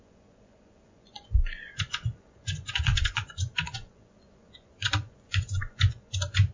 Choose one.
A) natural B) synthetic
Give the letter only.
B